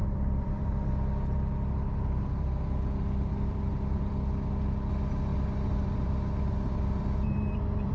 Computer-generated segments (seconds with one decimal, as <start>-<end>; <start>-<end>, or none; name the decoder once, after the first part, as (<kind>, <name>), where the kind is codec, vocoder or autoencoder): 0.0-0.9 (vocoder, BigVGAN v2); 3.3-4.1; 5.3-7.9